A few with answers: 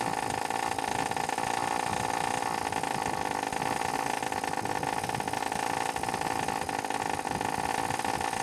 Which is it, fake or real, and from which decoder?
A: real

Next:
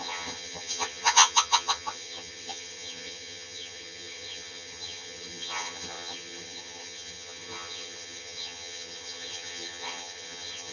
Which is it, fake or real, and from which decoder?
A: fake, vocoder, HiFi-GAN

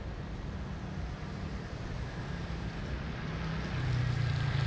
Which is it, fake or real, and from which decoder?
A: real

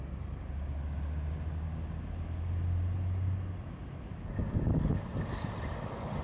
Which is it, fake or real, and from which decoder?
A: real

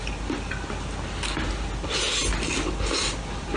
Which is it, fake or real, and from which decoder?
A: real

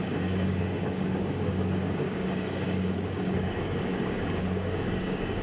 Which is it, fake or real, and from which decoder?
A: fake, codec, DAC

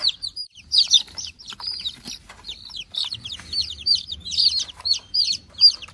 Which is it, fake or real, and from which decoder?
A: fake, vocoder, BigVGAN v2